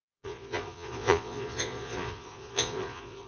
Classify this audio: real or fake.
fake